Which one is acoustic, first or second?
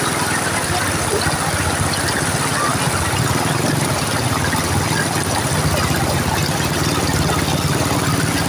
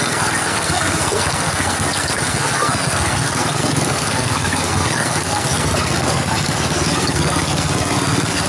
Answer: first